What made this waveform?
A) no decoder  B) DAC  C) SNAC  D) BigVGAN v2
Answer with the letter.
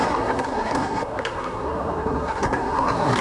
C